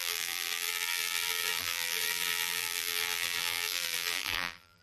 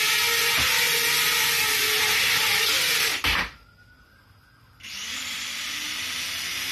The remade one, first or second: first